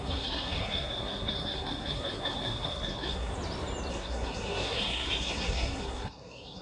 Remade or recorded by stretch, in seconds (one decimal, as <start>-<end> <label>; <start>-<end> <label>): 0.0-3.3 remade; 3.3-3.9 recorded; 3.9-6.6 remade